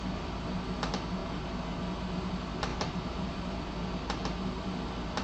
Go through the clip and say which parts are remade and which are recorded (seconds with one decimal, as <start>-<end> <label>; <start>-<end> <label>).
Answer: 0.0-2.7 recorded; 2.7-3.5 remade; 3.5-5.2 recorded